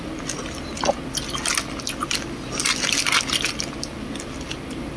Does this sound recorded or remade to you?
recorded